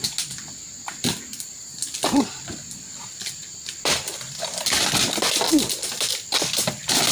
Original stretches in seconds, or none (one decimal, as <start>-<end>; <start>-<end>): 0.0-1.7; 5.4-7.1